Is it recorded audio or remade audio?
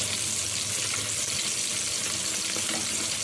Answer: recorded